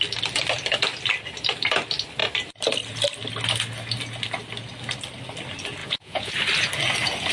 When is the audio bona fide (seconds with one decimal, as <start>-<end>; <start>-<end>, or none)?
0.0-5.8; 6.3-7.3